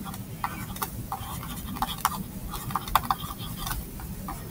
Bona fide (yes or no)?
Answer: yes